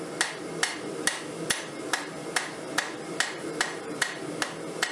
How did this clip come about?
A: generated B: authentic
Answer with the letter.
B